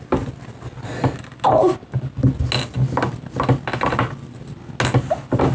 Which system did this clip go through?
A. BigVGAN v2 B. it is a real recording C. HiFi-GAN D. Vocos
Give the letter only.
B